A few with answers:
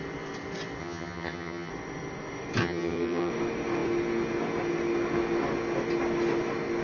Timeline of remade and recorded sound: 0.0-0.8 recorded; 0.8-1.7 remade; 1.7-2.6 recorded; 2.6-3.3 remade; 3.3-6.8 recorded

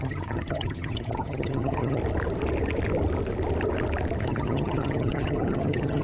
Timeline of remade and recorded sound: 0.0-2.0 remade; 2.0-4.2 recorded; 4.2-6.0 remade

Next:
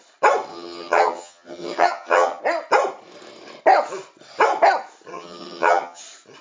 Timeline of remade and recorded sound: 0.0-0.5 recorded; 0.5-2.4 remade; 2.4-5.1 recorded; 5.1-6.0 remade; 6.0-6.4 recorded

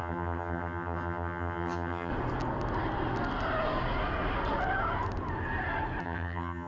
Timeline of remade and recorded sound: 0.0-2.1 remade; 2.1-6.0 recorded; 6.0-6.7 remade

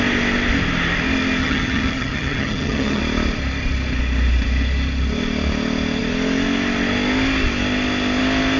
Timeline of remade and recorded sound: 0.0-1.4 recorded; 1.4-3.0 remade; 3.0-8.6 recorded

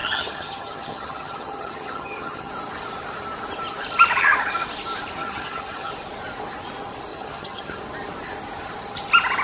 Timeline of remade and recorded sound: 0.0-2.5 remade; 2.5-5.2 recorded; 5.2-5.9 remade; 5.9-7.1 recorded; 7.1-7.8 remade; 7.8-9.4 recorded